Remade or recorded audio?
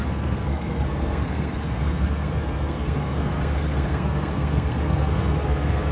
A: remade